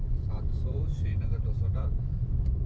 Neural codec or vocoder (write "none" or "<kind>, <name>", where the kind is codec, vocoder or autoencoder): vocoder, Vocos